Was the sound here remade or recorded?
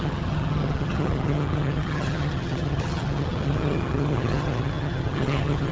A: remade